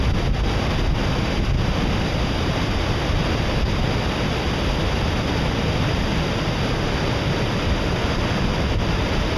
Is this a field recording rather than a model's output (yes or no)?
yes